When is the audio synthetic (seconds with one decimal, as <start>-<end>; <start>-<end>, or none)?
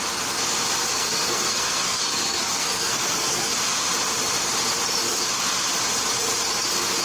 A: 0.8-3.5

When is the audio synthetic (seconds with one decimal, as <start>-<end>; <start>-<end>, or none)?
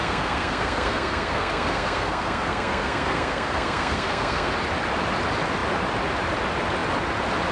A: 0.0-4.5